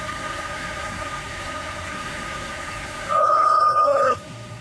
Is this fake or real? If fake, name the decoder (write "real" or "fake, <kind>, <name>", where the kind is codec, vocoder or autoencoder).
fake, codec, SNAC